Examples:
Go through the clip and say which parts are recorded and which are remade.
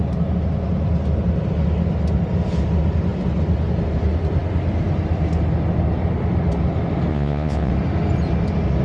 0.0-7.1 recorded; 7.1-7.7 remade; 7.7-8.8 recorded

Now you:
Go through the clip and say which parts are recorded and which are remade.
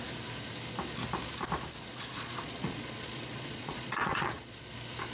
0.0-1.9 recorded; 1.9-4.6 remade; 4.6-5.1 recorded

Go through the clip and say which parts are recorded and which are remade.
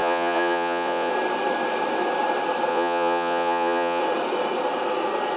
0.0-1.1 remade; 1.1-2.7 recorded; 2.7-4.0 remade; 4.0-5.4 recorded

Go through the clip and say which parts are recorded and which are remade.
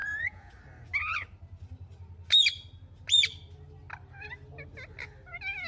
0.0-0.5 remade; 0.5-5.7 recorded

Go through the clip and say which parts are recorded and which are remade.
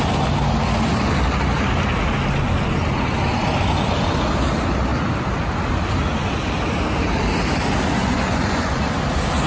0.0-7.9 recorded; 7.9-8.8 remade; 8.8-9.5 recorded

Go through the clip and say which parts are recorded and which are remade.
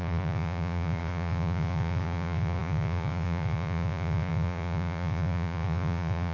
0.0-6.3 remade